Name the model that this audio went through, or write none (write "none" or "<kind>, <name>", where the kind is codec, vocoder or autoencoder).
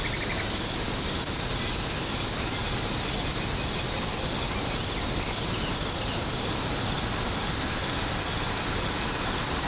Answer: none